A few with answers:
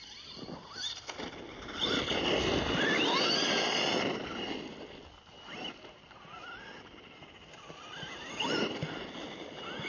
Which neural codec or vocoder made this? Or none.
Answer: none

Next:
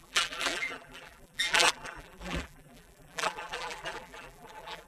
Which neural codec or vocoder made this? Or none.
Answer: vocoder, BigVGAN v2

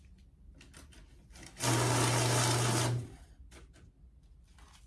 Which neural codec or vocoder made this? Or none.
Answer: none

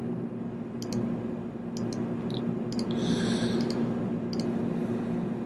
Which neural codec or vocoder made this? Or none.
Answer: none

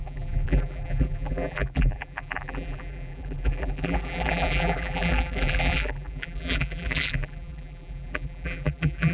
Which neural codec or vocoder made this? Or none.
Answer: vocoder, BigVGAN v2